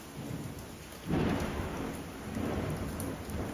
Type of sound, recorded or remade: recorded